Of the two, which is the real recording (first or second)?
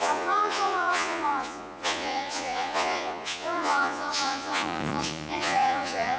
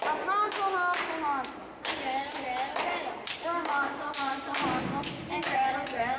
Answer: second